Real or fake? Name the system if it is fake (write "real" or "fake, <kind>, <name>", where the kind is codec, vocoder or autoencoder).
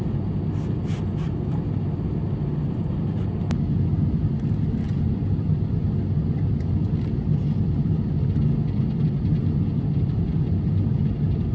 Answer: real